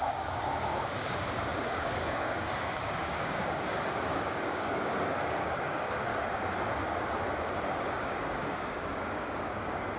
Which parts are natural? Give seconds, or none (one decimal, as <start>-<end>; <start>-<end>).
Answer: 6.1-7.8